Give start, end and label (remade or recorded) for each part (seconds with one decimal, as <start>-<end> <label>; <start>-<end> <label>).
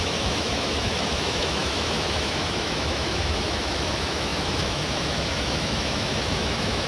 0.0-6.9 remade